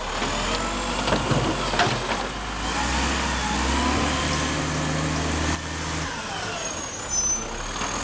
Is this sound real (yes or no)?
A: yes